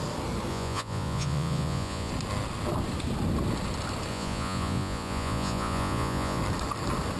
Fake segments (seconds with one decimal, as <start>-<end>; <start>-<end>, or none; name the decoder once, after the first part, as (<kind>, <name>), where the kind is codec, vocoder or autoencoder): 0.5-2.1 (vocoder, Vocos); 4.1-6.4